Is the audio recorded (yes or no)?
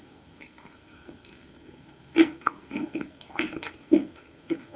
no